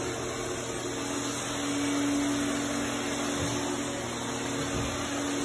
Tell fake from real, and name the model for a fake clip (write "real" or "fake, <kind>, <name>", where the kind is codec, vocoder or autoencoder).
real